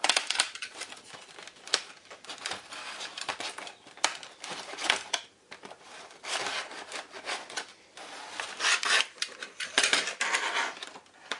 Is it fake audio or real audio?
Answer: fake